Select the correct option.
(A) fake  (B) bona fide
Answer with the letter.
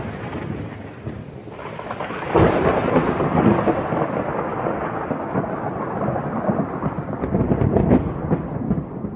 A